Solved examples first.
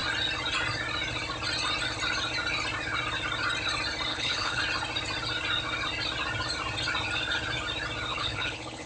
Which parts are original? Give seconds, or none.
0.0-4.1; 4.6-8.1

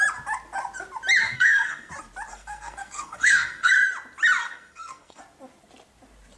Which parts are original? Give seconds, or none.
0.0-1.2; 1.9-2.3; 3.7-4.4; 5.2-6.4

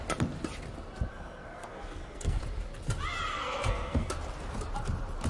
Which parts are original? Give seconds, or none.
0.0-1.1; 2.4-3.3; 4.1-5.3

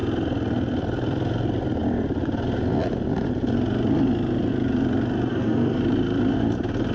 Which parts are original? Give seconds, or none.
0.0-5.3; 5.8-6.9

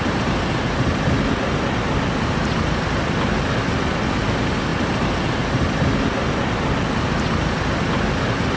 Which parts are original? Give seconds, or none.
0.0-8.6

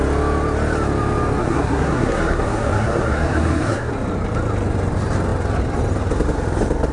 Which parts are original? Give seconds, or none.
0.0-1.4; 3.9-6.9

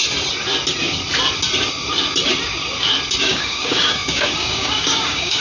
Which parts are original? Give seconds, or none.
0.0-3.2

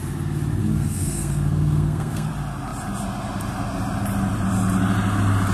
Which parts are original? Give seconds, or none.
0.0-0.6; 2.3-5.5